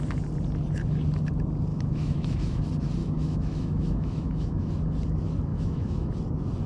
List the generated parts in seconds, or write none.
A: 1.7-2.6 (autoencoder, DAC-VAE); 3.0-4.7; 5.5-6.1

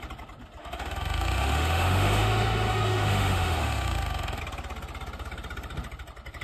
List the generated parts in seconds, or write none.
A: 0.6-4.4 (autoencoder, DAC-VAE)

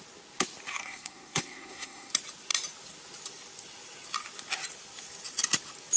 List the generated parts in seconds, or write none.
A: 0.8-2.1 (codec, SNAC)

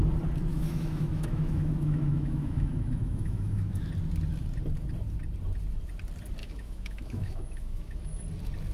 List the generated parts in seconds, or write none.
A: 0.5-3.9 (autoencoder, DAC-VAE); 6.4-8.2

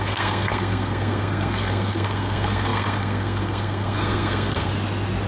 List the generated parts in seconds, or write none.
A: 0.0-4.7 (codec, SNAC)

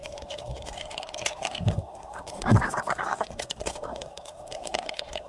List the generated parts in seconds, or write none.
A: 0.0-5.3 (codec, SNAC)